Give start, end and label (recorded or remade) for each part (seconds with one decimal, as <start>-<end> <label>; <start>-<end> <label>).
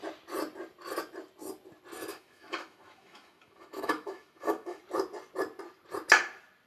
0.0-2.1 recorded; 2.1-4.8 remade; 4.8-6.7 recorded